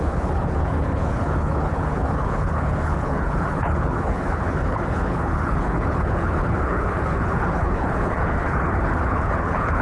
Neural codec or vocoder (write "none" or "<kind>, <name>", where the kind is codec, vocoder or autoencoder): codec, HILCodec